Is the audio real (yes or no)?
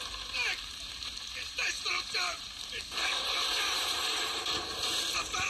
no